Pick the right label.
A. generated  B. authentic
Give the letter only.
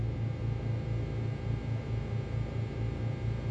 B